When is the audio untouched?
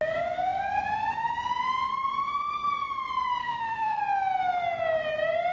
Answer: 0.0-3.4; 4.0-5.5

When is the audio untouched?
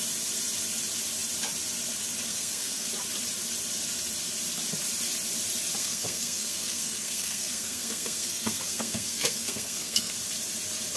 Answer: 0.0-2.3; 2.9-5.8; 10.1-11.0